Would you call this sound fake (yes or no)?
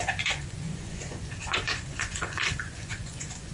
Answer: yes